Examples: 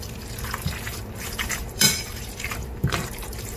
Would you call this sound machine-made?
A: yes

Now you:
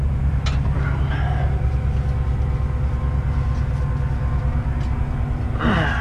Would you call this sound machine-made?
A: no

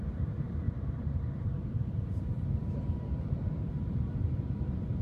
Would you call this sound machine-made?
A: yes